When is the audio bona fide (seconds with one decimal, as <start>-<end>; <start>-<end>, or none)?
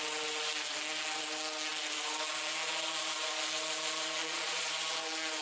0.0-4.2; 4.7-5.4